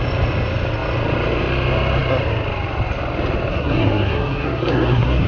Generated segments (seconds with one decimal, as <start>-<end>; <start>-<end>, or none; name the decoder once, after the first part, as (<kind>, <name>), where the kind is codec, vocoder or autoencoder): 3.5-5.3 (codec, SNAC)